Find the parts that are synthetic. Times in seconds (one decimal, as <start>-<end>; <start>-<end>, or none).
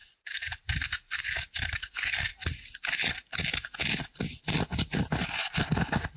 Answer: 0.0-1.9